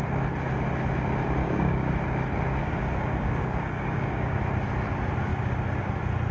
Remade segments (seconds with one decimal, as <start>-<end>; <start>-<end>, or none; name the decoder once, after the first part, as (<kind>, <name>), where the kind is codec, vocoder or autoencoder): 1.4-1.9 (codec, DAC); 2.6-4.4